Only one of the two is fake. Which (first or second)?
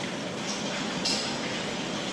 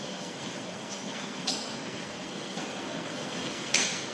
second